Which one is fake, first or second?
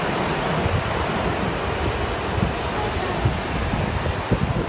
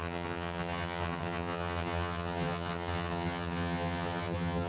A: second